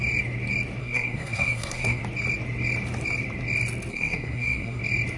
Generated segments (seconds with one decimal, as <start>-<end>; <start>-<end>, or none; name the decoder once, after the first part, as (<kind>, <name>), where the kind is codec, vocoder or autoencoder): 0.8-2.0 (codec, SNAC); 3.9-4.8